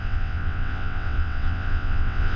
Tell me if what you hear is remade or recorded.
remade